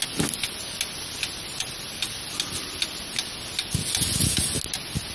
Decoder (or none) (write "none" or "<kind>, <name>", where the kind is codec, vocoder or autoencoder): none